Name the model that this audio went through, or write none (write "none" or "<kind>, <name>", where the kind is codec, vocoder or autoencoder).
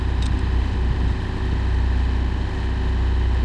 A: none